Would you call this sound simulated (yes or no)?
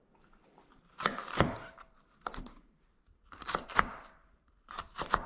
yes